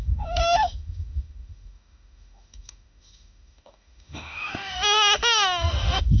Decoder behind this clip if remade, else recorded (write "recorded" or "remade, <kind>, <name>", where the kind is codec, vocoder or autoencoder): remade, autoencoder, DAC-VAE